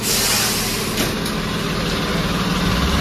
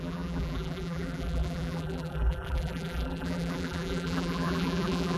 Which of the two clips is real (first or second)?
first